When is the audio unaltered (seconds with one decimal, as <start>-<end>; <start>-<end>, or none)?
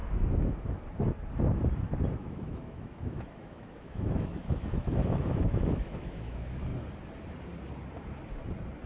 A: 0.0-2.2; 6.7-8.9